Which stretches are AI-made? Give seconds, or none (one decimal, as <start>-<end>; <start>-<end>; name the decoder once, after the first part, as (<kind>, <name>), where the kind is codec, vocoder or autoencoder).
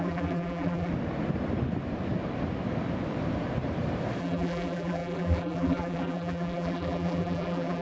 0.0-0.9 (vocoder, BigVGAN v2); 4.2-7.8